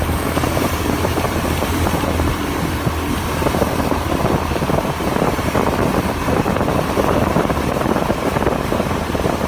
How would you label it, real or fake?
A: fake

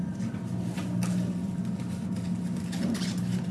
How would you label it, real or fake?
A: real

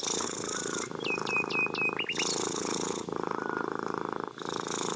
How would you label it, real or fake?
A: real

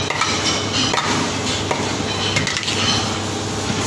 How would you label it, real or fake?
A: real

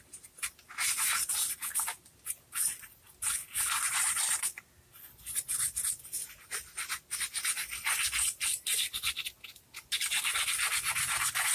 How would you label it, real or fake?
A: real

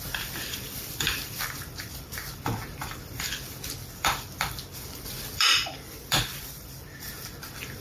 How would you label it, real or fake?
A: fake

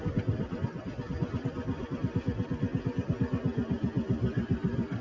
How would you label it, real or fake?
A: real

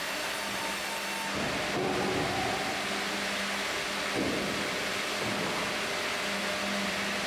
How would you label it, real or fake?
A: real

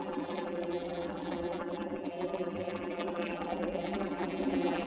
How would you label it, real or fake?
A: fake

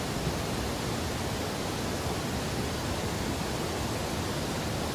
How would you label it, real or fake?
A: real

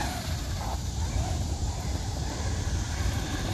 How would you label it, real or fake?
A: fake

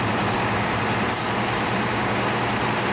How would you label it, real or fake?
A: real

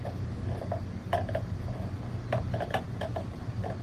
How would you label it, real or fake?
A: real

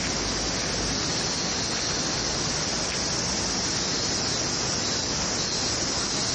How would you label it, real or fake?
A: real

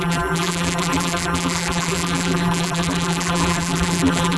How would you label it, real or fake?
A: fake